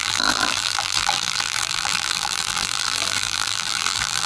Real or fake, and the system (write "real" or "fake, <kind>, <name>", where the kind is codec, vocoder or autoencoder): fake, vocoder, BigVGAN v2